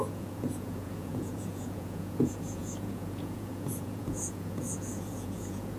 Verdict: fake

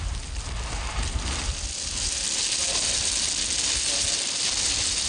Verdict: real